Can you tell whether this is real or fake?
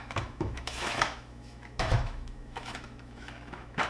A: fake